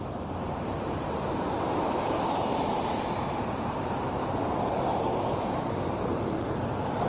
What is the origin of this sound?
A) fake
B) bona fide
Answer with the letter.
A